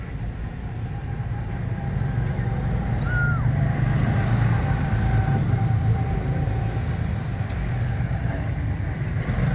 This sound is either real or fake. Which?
real